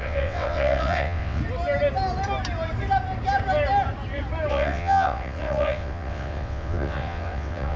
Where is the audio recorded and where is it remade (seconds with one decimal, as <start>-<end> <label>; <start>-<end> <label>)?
0.0-1.4 remade; 1.4-4.5 recorded; 4.5-7.8 remade